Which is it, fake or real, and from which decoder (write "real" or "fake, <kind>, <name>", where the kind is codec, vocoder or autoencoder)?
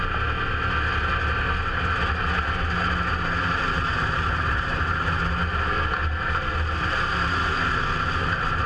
real